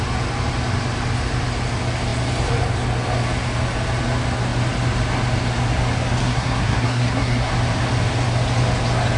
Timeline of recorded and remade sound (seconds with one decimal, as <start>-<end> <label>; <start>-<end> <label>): 0.0-6.2 recorded; 6.2-7.5 remade; 7.5-9.2 recorded